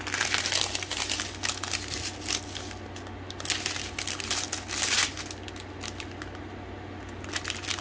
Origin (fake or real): real